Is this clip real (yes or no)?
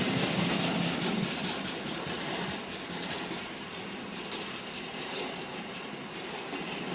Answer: yes